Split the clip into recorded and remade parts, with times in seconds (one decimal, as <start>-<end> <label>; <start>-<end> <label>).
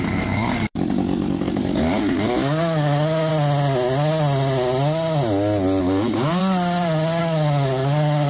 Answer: 0.0-3.3 remade; 3.3-5.8 recorded; 5.8-6.4 remade; 6.4-7.2 recorded; 7.2-8.3 remade